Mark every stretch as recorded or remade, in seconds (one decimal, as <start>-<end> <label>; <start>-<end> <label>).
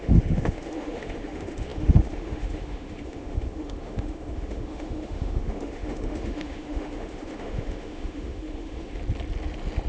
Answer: 0.0-9.0 remade; 9.0-9.9 recorded